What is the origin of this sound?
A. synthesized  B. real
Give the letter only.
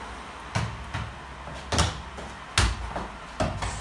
B